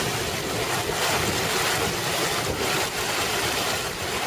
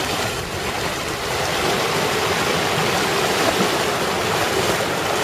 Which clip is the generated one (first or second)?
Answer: second